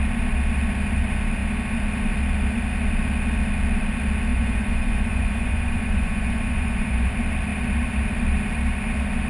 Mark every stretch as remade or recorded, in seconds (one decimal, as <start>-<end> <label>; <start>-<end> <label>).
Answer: 0.0-4.3 recorded; 4.3-7.1 remade; 7.1-9.3 recorded